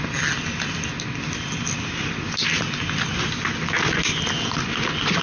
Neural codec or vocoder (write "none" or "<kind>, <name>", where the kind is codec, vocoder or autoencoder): none